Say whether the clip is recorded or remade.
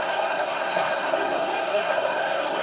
remade